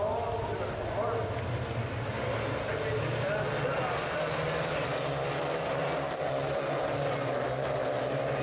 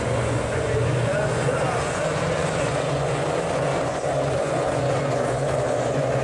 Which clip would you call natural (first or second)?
first